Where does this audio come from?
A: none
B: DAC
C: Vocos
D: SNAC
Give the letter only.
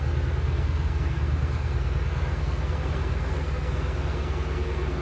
D